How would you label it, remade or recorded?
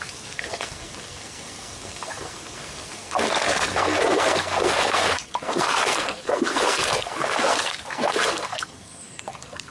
remade